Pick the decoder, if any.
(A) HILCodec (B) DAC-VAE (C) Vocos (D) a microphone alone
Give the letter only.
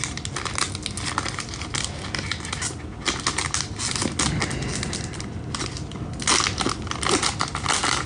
D